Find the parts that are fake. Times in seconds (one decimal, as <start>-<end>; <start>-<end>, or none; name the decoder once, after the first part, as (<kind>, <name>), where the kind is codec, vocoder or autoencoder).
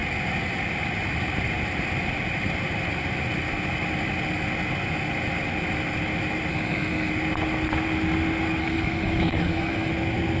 6.5-7.1 (codec, SNAC); 8.6-9.9